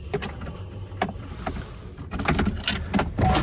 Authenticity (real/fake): real